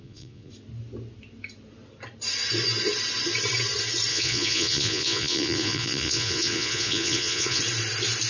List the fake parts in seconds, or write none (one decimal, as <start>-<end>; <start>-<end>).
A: 0.0-0.5; 4.1-7.6